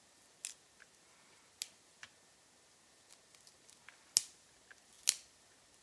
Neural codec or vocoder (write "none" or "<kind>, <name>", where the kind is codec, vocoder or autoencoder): none